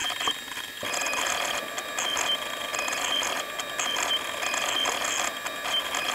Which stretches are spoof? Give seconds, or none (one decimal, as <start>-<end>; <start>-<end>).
none

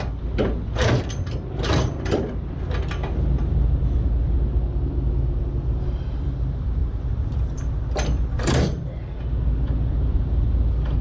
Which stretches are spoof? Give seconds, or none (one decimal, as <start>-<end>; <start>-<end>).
6.8-7.7